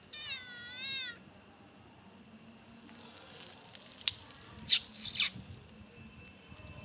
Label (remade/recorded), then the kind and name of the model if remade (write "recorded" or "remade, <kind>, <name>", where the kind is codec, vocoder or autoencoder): recorded